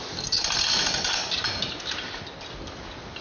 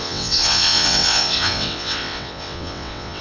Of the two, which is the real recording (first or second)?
first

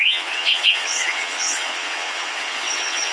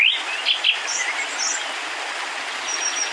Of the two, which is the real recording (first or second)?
second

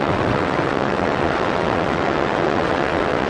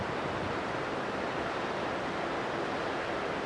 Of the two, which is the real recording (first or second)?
second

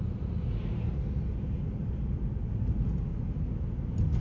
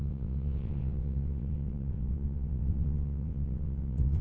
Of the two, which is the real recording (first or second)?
first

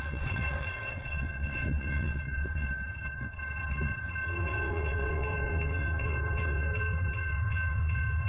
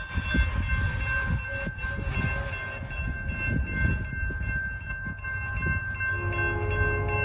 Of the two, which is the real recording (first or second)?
second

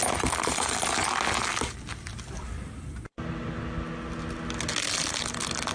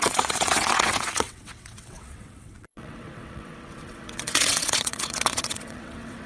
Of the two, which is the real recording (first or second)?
first